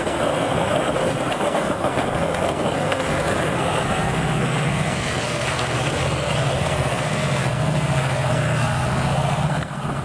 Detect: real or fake fake